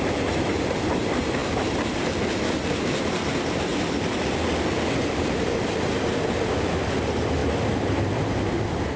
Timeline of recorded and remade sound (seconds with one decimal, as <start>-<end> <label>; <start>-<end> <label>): 0.0-3.7 remade; 3.7-5.1 recorded; 5.1-9.0 remade